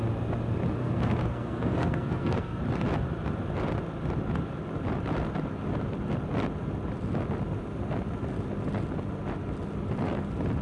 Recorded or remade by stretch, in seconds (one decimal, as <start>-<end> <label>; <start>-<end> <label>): 0.0-0.8 recorded; 0.8-2.6 remade; 2.6-10.6 recorded

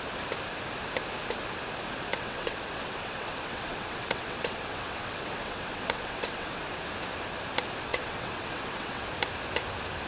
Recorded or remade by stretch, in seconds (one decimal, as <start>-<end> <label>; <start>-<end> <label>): 0.0-2.1 recorded; 2.1-6.6 remade; 6.6-7.9 recorded; 7.9-9.0 remade; 9.0-10.1 recorded

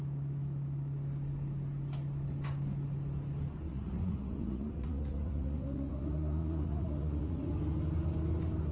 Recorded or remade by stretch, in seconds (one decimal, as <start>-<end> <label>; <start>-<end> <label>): 0.0-3.7 recorded; 3.7-7.5 remade; 7.5-8.7 recorded

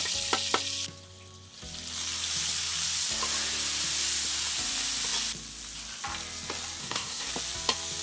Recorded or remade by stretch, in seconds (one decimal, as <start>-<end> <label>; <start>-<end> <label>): 0.0-6.8 recorded; 6.8-7.3 remade; 7.3-8.0 recorded